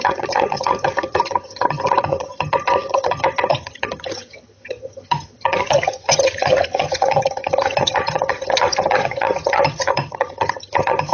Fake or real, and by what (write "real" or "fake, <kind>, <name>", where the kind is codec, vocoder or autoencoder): fake, vocoder, HiFi-GAN